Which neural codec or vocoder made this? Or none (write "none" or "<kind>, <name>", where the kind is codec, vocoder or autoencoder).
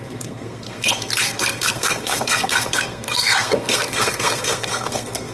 codec, SNAC